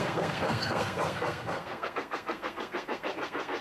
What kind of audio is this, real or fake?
fake